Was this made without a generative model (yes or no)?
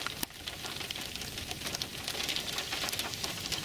yes